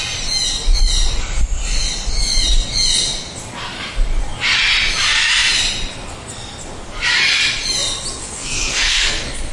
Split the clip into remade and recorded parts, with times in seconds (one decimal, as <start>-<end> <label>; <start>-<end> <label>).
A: 0.0-8.2 recorded; 8.2-9.5 remade